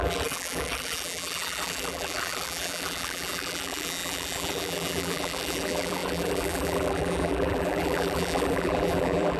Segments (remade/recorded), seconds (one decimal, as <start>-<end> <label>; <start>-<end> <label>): 0.0-9.4 remade